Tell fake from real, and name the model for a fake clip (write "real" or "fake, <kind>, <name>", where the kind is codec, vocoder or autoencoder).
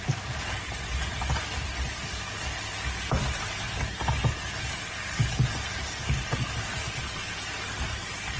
real